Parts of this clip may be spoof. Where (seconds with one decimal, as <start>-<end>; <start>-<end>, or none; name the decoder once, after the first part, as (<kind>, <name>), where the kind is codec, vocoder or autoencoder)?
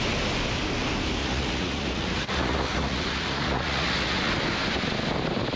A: 1.2-4.3 (vocoder, Vocos)